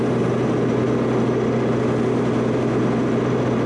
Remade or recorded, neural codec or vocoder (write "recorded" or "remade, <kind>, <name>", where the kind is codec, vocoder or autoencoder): recorded